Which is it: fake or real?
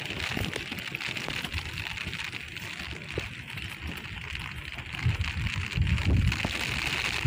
real